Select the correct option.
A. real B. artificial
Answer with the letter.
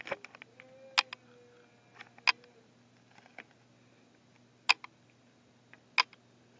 A